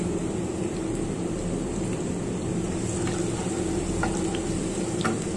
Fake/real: real